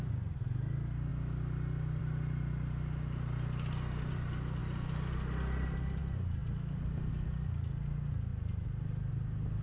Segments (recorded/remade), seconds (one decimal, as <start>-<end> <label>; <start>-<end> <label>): 0.0-9.6 recorded